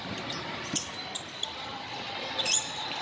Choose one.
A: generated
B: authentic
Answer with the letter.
B